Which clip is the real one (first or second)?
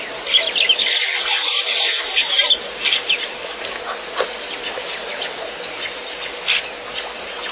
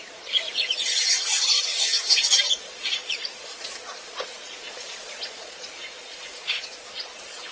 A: first